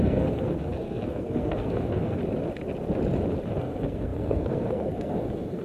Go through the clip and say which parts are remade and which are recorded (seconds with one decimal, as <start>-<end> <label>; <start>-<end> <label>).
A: 0.0-2.2 remade; 2.2-3.6 recorded; 3.6-5.6 remade